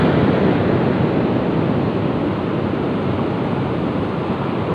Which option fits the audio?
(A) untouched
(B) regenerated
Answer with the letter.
A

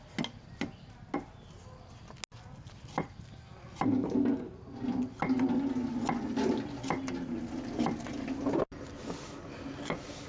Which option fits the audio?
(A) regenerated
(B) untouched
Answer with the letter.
B